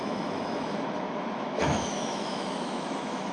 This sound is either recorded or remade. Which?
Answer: remade